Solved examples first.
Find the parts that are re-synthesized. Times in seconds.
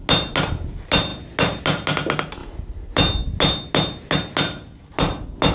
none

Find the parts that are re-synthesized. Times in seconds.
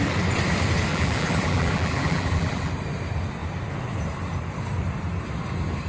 0.9-2.7 (vocoder, BigVGAN v2)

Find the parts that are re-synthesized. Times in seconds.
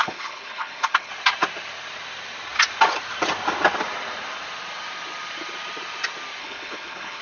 0.0-1.1 (codec, HILCodec); 6.4-7.2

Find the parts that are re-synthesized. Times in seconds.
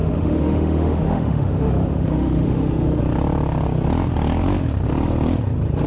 0.0-3.0 (autoencoder, DAC-VAE)